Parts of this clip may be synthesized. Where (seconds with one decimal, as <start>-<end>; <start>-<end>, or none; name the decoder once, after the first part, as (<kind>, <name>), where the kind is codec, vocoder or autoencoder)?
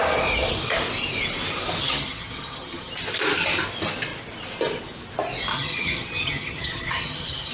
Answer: 1.8-2.9 (vocoder, HiFi-GAN); 5.5-7.5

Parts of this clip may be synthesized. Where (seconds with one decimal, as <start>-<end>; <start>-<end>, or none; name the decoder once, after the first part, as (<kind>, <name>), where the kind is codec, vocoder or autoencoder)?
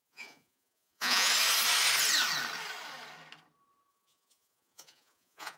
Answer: 0.0-1.3 (vocoder, Vocos); 3.9-5.6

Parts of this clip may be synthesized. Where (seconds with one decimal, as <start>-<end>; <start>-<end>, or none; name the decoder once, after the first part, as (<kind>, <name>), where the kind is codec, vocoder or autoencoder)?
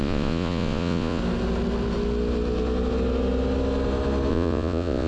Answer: 0.0-1.2 (vocoder, Vocos); 4.3-5.1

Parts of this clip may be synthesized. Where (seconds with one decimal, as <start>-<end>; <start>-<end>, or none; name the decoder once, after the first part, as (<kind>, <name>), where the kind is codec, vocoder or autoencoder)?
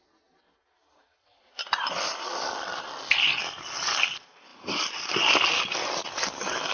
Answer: 4.5-5.1 (vocoder, BigVGAN v2)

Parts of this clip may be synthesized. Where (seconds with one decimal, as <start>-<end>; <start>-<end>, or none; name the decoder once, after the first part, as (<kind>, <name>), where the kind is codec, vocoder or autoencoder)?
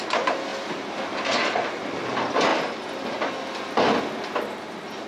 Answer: none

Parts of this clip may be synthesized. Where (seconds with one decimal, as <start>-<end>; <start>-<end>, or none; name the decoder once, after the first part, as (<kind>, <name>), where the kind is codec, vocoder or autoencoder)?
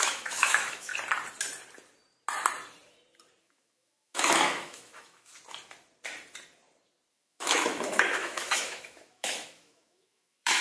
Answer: 0.0-0.9 (autoencoder, DAC-VAE); 3.4-5.3; 7.1-10.6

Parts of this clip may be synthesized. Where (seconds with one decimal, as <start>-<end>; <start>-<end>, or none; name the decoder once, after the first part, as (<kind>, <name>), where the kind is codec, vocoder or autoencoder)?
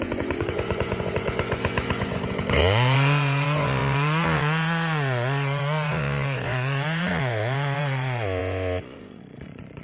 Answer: 0.0-9.8 (vocoder, Vocos)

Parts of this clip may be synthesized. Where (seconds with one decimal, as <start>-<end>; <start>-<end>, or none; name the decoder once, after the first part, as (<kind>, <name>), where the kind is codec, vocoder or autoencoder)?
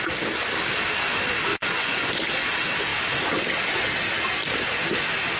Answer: 1.5-2.1 (vocoder, Vocos)